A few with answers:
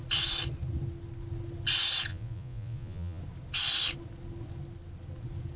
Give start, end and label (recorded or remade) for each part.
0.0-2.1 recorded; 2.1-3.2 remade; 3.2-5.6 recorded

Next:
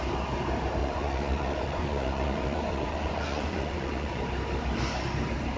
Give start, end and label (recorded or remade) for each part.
0.0-0.8 recorded; 0.8-4.2 remade; 4.2-5.6 recorded

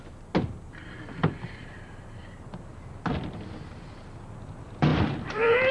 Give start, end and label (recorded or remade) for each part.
0.0-2.7 recorded; 2.7-4.2 remade; 4.2-4.9 recorded; 4.9-5.7 remade

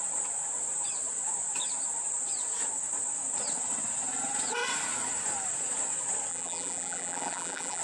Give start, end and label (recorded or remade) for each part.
0.0-6.3 recorded; 6.3-7.8 remade